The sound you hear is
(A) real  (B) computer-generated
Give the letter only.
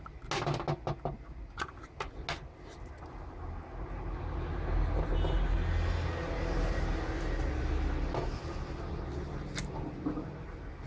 A